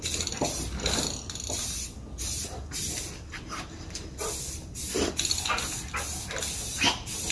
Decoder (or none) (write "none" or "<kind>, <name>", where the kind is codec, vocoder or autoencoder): none